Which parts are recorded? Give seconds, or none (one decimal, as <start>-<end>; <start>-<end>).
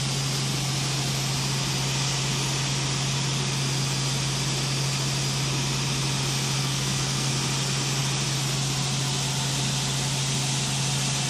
0.0-6.6; 7.3-11.3